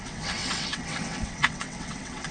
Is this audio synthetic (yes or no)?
yes